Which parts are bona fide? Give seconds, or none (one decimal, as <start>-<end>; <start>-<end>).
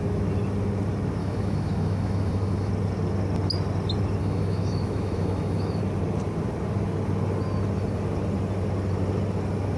0.0-1.2; 2.7-4.2; 5.8-9.8